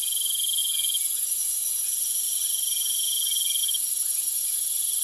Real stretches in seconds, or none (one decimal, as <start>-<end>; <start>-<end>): 0.0-0.6; 3.6-5.0

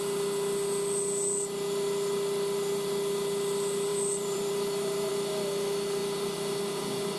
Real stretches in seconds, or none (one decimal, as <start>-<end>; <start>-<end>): 0.0-3.9; 5.1-7.2

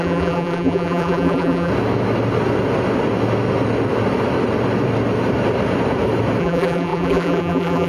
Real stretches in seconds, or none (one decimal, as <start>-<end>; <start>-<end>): 1.7-6.4

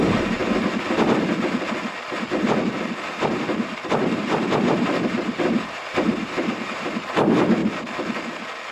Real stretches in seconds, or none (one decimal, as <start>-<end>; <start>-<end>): 0.4-3.1; 7.6-8.7